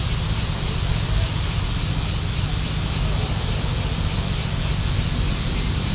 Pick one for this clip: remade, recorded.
recorded